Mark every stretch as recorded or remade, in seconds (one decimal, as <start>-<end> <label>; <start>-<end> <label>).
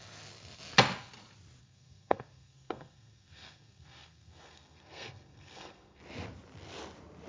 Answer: 0.0-1.6 recorded; 1.6-6.0 remade; 6.0-7.3 recorded